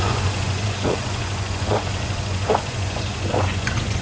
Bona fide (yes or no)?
no